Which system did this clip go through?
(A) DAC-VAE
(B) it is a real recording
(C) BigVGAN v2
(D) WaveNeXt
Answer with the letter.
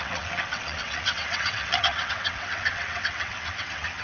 D